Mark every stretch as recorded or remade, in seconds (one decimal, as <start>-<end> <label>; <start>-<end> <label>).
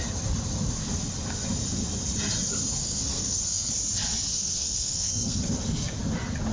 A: 0.0-2.8 recorded; 2.8-3.7 remade; 3.7-4.3 recorded; 4.3-5.4 remade; 5.4-6.5 recorded